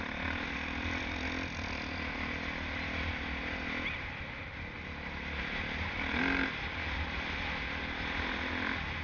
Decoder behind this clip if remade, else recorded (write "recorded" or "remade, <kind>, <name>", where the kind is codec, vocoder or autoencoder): recorded